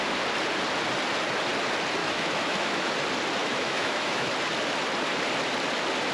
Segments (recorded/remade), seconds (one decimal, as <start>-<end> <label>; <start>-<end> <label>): 0.0-2.0 recorded; 2.0-2.9 remade; 2.9-3.4 recorded; 3.4-4.3 remade; 4.3-6.1 recorded

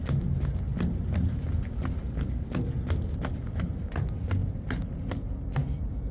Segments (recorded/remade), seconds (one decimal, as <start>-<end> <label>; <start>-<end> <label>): 0.0-6.1 recorded

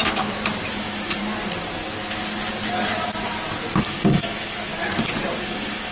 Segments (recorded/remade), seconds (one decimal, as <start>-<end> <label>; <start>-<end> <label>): 0.0-0.7 recorded; 0.7-1.2 remade; 1.2-3.8 recorded; 3.8-4.7 remade; 4.7-5.4 recorded; 5.4-5.9 remade

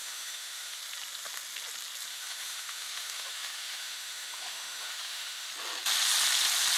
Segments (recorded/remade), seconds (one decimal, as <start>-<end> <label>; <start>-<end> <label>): 0.0-0.8 remade; 0.8-2.1 recorded; 2.1-5.5 remade; 5.5-6.8 recorded

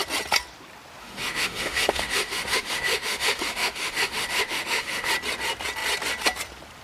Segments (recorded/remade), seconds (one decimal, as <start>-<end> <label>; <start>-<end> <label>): 0.0-1.0 recorded; 1.0-5.1 remade; 5.1-6.8 recorded

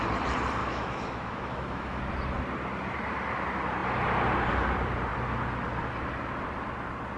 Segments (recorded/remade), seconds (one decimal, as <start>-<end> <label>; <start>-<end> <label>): 0.0-0.6 recorded; 0.6-2.0 remade; 2.0-7.2 recorded

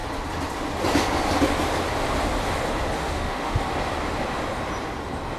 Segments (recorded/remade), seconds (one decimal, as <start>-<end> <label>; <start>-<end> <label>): 0.0-3.0 recorded; 3.0-3.6 remade; 3.6-5.4 recorded